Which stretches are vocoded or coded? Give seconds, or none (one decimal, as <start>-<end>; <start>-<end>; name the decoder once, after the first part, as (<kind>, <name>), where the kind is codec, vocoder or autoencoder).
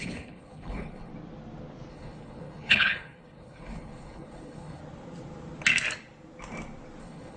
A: 0.0-1.1 (codec, HILCodec); 1.9-4.8; 7.0-7.4